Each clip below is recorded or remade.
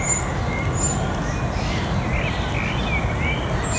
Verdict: recorded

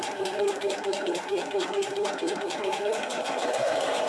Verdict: remade